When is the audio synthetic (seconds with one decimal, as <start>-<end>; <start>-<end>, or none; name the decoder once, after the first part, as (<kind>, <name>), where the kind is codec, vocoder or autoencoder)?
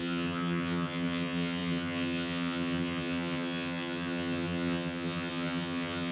0.0-6.1 (vocoder, HiFi-GAN)